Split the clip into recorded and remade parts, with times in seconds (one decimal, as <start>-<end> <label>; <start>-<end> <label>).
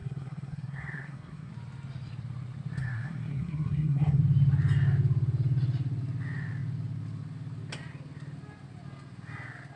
0.0-1.5 remade; 1.5-2.8 recorded; 2.8-4.2 remade; 4.2-9.8 recorded